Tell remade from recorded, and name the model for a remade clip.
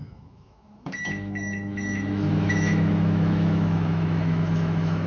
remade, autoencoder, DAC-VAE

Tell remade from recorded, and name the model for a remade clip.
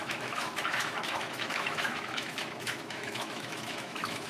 remade, autoencoder, DAC-VAE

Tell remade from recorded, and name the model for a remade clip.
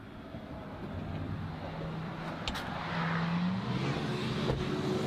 recorded